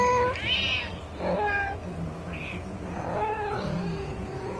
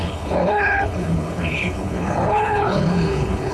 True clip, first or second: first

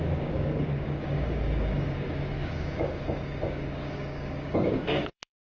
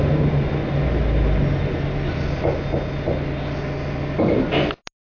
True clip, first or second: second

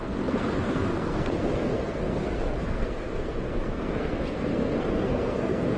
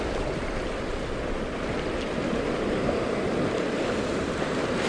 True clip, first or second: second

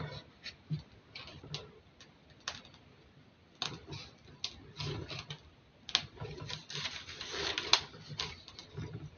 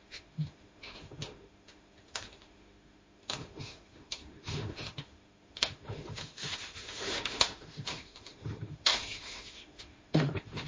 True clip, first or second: first